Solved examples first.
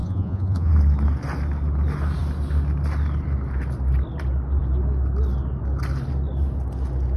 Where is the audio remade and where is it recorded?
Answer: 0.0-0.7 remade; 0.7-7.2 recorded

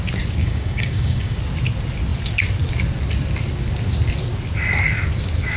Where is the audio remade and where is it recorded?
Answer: 0.0-0.4 recorded; 0.4-1.4 remade; 1.4-5.6 recorded

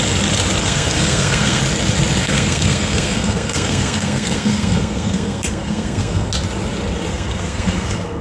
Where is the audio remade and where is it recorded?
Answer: 0.0-0.6 recorded; 0.6-1.6 remade; 1.6-2.2 recorded; 2.2-6.3 remade; 6.3-7.1 recorded; 7.1-8.2 remade

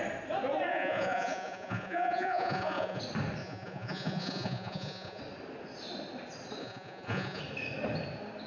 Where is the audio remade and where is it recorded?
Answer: 0.0-0.7 recorded; 0.7-3.0 remade; 3.0-3.4 recorded; 3.4-5.2 remade; 5.2-6.6 recorded; 6.6-7.4 remade; 7.4-8.5 recorded

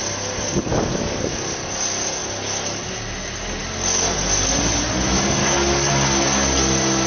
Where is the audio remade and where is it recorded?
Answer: 0.0-0.7 recorded; 0.7-1.3 remade; 1.3-5.4 recorded; 5.4-5.9 remade; 5.9-7.1 recorded

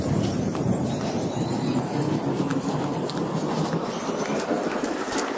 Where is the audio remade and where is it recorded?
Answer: 0.0-5.4 recorded

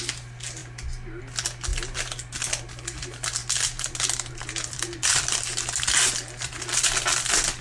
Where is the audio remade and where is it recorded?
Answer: 0.0-7.6 recorded